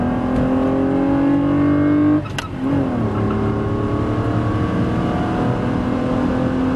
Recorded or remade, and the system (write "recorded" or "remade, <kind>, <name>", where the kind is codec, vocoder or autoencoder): recorded